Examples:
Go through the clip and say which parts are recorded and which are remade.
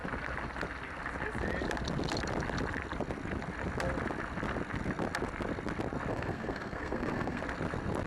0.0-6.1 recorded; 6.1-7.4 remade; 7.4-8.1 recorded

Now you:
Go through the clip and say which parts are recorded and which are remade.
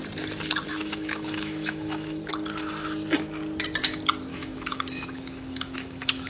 0.0-0.7 recorded; 0.7-2.2 remade; 2.2-4.3 recorded; 4.3-6.3 remade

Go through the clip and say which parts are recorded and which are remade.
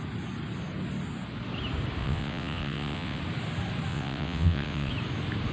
0.0-2.0 recorded; 2.0-3.2 remade; 3.2-3.9 recorded; 3.9-4.9 remade; 4.9-5.5 recorded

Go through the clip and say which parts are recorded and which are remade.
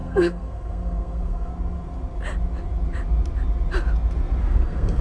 0.0-1.5 remade; 1.5-4.4 recorded; 4.4-5.0 remade